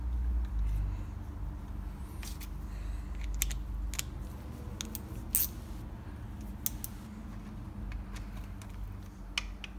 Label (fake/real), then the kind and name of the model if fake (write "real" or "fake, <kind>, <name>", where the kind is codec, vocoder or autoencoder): real